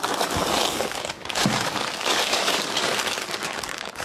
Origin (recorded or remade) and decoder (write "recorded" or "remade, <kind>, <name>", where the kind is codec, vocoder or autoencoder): remade, codec, DAC